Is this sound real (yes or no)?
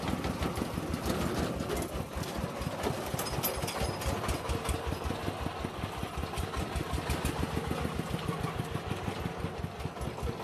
yes